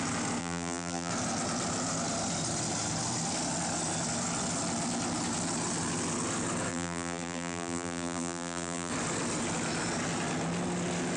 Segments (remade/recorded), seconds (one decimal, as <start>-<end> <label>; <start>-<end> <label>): 0.0-0.4 recorded; 0.4-1.1 remade; 1.1-6.7 recorded; 6.7-8.9 remade; 8.9-11.2 recorded